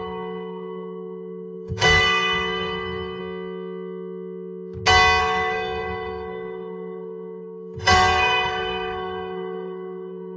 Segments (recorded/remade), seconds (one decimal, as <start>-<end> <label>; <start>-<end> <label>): 0.0-3.2 remade; 3.2-5.2 recorded; 5.2-10.4 remade